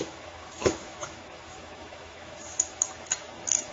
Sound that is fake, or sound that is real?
fake